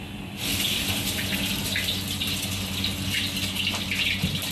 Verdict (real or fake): real